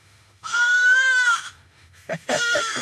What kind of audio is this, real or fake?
fake